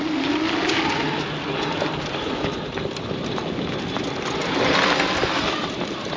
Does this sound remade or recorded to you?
recorded